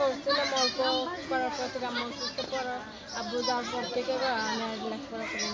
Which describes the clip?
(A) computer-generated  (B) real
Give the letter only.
B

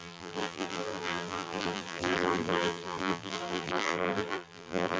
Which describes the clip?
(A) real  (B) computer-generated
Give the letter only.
B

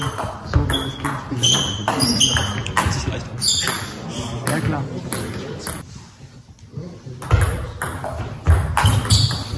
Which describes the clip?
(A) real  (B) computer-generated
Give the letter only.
A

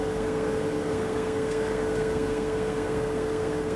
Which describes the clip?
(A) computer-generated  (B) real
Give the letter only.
A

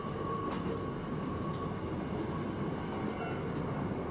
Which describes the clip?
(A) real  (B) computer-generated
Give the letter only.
A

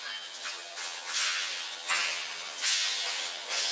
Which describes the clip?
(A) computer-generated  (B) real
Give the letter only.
A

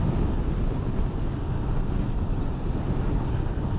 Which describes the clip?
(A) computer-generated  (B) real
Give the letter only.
B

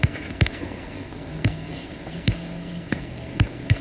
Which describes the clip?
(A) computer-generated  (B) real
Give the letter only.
A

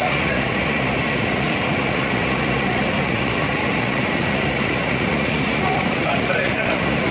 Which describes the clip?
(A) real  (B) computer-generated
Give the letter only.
B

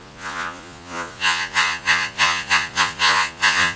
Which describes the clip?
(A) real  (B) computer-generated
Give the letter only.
B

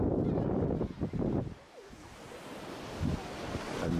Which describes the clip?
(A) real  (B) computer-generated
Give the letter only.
A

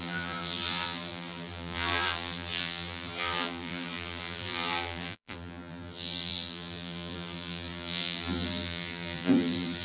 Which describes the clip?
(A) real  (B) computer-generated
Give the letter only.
B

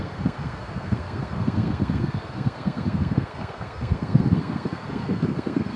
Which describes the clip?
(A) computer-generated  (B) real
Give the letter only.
A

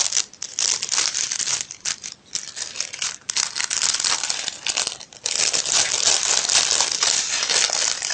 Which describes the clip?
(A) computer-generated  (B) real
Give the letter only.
B